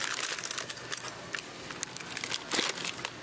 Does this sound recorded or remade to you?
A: recorded